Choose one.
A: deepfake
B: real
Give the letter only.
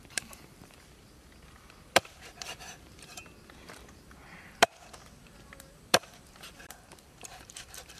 A